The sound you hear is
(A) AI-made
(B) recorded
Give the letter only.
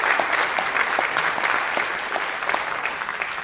B